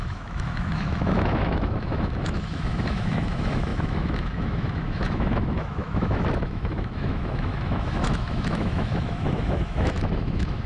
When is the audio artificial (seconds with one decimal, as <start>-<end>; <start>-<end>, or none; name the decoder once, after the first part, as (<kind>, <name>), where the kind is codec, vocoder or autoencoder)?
0.0-10.7 (autoencoder, DAC-VAE)